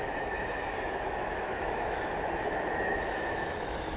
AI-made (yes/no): yes